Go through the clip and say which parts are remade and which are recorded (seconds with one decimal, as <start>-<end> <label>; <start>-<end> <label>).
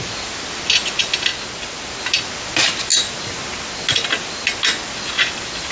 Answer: 0.0-5.7 recorded